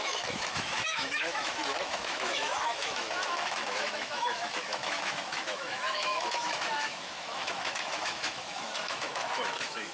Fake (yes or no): yes